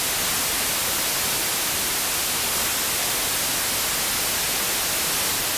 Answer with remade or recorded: recorded